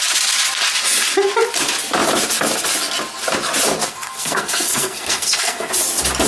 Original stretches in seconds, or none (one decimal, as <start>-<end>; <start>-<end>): 0.0-3.8; 5.7-6.3